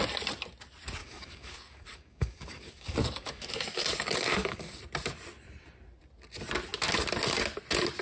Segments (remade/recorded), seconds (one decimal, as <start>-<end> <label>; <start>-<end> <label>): 0.0-1.0 recorded; 1.0-4.8 remade; 4.8-8.0 recorded